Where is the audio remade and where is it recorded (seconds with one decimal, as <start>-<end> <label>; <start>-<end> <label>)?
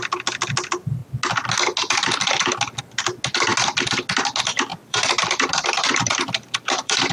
0.0-4.7 recorded; 4.7-7.1 remade